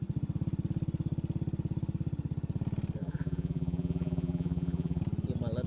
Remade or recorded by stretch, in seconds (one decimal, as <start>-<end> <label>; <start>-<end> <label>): 0.0-3.0 recorded; 3.0-5.0 remade; 5.0-5.7 recorded